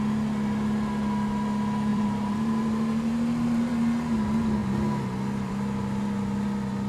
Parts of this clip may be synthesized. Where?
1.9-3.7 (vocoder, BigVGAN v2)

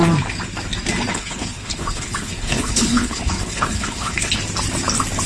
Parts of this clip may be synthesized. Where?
1.1-4.3 (codec, HILCodec)

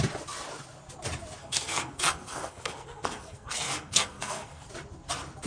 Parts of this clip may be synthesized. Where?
1.4-4.7 (codec, SNAC)

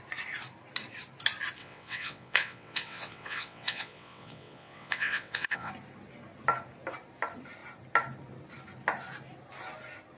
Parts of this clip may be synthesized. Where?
1.6-5.7 (vocoder, WaveNeXt)